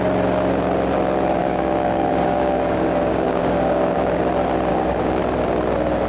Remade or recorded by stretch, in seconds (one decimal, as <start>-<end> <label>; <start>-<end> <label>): 0.0-1.4 recorded; 1.4-4.2 remade; 4.2-4.7 recorded; 4.7-5.2 remade; 5.2-6.1 recorded